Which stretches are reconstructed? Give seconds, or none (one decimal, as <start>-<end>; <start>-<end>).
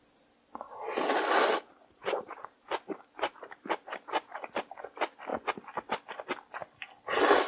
1.7-4.1